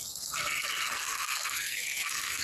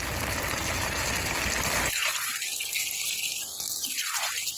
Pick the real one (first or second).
second